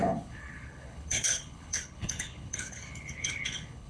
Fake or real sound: fake